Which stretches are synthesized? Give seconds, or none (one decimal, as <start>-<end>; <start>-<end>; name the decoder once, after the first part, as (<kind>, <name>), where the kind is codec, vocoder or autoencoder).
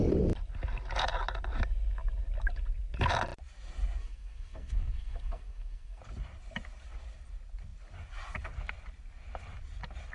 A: 4.0-6.0 (codec, SNAC)